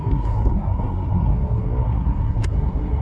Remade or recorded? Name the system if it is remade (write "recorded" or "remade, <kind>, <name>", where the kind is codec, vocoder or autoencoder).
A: remade, codec, SNAC